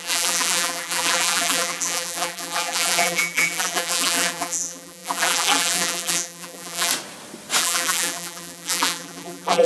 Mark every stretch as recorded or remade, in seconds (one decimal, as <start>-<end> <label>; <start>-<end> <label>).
0.0-6.9 remade; 6.9-7.6 recorded; 7.6-9.7 remade